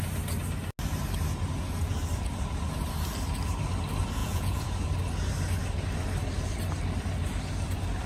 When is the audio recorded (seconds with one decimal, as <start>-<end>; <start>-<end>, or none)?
0.0-4.2; 4.7-8.1

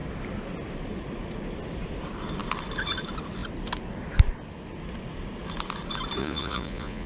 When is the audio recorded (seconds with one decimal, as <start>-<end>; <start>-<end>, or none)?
0.0-6.2

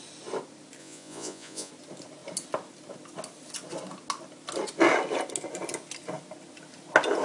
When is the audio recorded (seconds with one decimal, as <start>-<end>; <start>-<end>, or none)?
0.0-0.8; 1.7-7.2

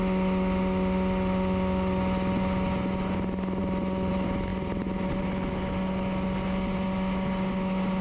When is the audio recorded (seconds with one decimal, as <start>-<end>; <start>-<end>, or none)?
0.0-8.0